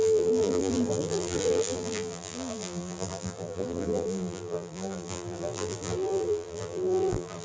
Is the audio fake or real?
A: fake